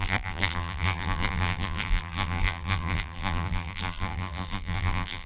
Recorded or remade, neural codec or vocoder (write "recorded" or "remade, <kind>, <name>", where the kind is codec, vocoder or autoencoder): remade, vocoder, BigVGAN v2